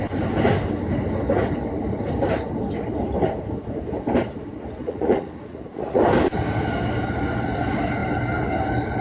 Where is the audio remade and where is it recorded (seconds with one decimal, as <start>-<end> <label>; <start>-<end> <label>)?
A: 0.0-4.8 recorded; 4.8-6.0 remade; 6.0-9.0 recorded